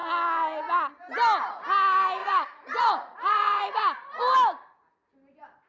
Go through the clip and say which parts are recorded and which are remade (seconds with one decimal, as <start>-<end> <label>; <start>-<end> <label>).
0.0-2.2 recorded; 2.2-3.8 remade; 3.8-5.7 recorded